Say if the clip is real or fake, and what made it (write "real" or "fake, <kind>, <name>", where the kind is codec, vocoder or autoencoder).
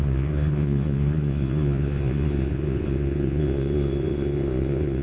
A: fake, vocoder, Vocos